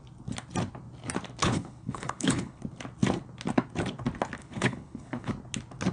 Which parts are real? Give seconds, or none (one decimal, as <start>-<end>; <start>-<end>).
0.0-1.4; 2.6-4.4; 5.3-5.9